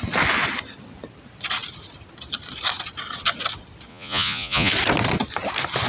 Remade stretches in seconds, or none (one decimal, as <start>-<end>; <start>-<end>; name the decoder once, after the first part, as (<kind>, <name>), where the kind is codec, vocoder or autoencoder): 3.9-4.7 (vocoder, Vocos)